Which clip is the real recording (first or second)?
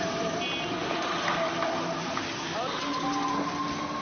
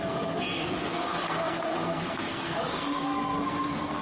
first